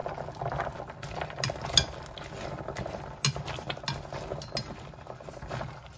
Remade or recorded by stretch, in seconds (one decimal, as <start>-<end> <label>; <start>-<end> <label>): 0.0-6.0 recorded